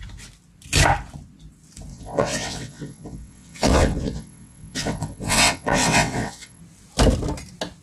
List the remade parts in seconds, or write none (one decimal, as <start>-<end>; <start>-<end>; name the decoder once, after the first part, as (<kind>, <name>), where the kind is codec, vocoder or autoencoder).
1.9-6.6 (vocoder, WaveNeXt)